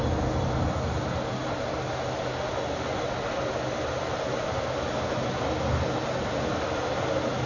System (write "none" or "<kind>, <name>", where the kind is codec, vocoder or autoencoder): none